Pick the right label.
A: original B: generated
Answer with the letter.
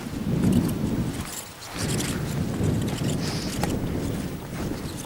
A